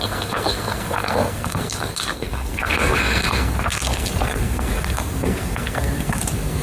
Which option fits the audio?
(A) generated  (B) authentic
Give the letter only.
A